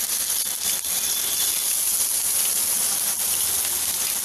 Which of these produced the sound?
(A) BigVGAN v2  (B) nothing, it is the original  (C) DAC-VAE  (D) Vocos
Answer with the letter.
B